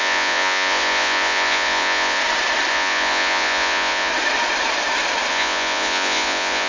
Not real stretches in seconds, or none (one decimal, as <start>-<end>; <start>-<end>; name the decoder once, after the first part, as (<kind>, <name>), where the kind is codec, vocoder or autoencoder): 0.0-2.2 (vocoder, Vocos); 2.7-4.1; 5.3-6.7